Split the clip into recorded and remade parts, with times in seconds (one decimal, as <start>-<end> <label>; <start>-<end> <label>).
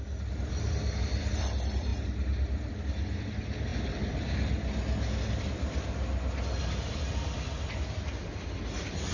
0.0-9.1 recorded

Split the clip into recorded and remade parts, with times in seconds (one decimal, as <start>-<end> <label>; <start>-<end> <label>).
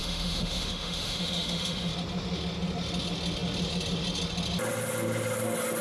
0.0-1.9 remade; 1.9-5.8 recorded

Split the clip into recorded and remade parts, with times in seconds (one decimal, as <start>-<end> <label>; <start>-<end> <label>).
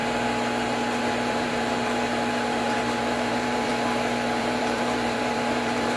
0.0-1.0 recorded; 1.0-3.7 remade; 3.7-4.4 recorded; 4.4-6.0 remade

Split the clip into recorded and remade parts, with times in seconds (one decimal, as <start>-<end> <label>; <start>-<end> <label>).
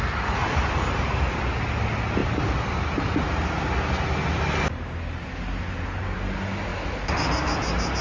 0.0-8.0 recorded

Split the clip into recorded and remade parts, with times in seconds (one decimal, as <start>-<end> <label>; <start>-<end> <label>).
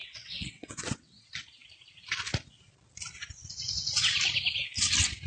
0.0-1.2 remade; 1.2-5.3 recorded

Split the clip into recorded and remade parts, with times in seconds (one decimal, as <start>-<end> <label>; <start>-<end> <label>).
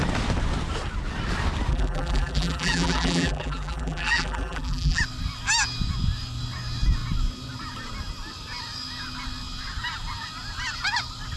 0.0-1.7 recorded; 1.7-5.0 remade; 5.0-11.4 recorded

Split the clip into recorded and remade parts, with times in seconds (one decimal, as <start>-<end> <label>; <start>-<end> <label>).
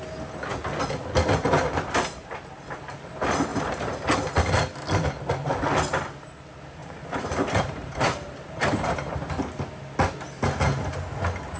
0.0-3.5 recorded; 3.5-4.1 remade; 4.1-6.8 recorded; 6.8-9.3 remade; 9.3-11.6 recorded